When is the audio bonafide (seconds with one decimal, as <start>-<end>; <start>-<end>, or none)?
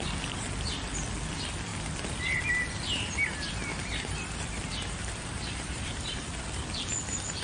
0.0-3.7; 6.4-7.4